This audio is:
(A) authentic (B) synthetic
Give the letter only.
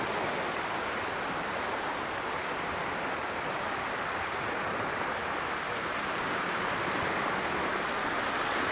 A